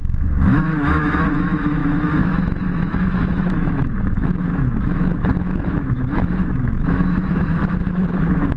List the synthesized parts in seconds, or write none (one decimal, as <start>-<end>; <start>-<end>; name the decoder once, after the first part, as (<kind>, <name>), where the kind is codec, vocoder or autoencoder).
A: 0.0-8.6 (autoencoder, DAC-VAE)